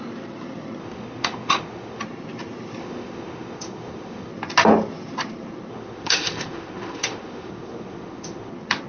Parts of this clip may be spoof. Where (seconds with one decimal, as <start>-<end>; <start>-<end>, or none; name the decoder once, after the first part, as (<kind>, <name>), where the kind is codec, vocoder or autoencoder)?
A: 0.8-2.0 (autoencoder, DAC-VAE); 2.8-4.3; 5.7-8.5